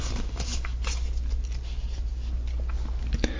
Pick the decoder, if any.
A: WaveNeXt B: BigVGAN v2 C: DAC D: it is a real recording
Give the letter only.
D